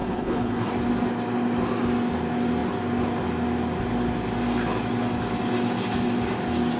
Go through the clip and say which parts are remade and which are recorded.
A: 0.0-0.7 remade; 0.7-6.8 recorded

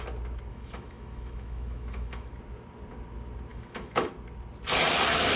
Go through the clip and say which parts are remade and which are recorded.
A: 0.0-0.5 recorded; 0.5-2.3 remade; 2.3-3.5 recorded; 3.5-4.1 remade; 4.1-5.4 recorded

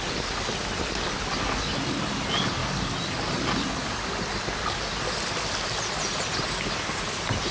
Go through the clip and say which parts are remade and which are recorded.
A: 0.0-7.5 recorded

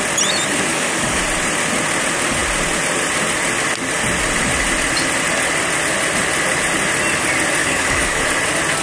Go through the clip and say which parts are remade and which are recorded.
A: 0.0-0.7 recorded; 0.7-1.2 remade; 1.2-7.6 recorded; 7.6-8.2 remade; 8.2-8.8 recorded